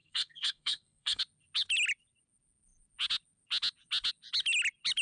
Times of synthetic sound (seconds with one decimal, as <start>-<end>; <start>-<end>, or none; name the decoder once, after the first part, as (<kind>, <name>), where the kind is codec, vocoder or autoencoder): 0.0-1.2 (codec, SNAC)